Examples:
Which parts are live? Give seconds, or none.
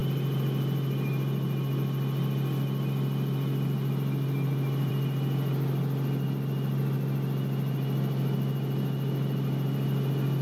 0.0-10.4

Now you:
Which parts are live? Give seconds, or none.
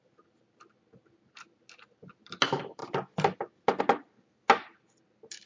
0.0-5.5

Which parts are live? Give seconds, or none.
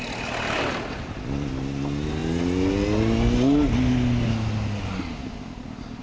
0.0-6.0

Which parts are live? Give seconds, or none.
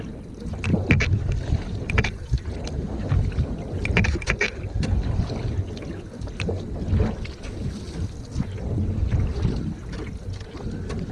0.0-0.7; 2.4-11.1